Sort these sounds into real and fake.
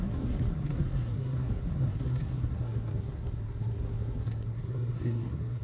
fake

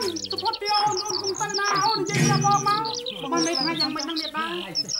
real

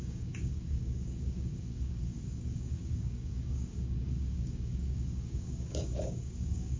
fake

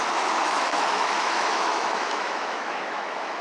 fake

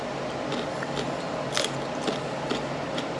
real